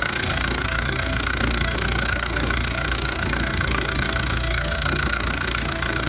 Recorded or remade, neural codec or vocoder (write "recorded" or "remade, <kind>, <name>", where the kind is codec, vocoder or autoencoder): remade, codec, DAC